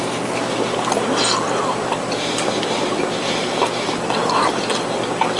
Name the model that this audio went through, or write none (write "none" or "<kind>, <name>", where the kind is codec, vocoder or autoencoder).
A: none